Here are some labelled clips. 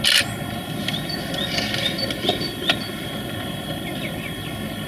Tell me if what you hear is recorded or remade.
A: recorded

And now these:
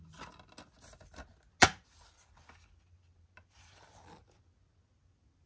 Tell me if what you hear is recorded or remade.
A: recorded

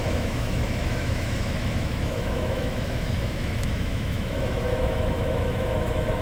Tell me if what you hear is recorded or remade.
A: remade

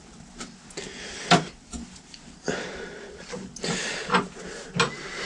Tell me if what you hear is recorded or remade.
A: recorded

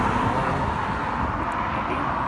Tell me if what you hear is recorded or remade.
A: recorded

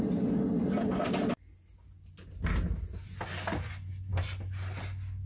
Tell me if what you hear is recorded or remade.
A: recorded